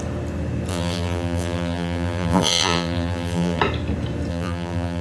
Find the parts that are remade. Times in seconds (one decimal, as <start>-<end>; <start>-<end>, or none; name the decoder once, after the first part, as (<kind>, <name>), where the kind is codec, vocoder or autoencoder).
0.7-3.6 (vocoder, BigVGAN v2); 4.3-5.0